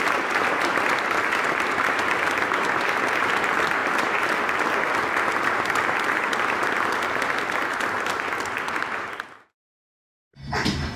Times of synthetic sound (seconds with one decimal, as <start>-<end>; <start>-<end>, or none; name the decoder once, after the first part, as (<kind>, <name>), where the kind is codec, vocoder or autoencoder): none